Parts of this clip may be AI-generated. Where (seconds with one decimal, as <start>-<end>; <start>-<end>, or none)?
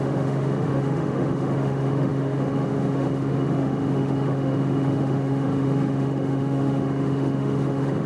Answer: 0.0-8.1